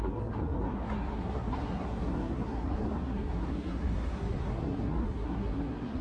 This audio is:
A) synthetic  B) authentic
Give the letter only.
A